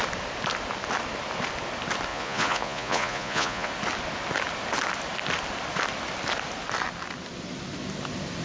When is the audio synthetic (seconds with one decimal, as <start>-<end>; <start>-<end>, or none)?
2.1-3.7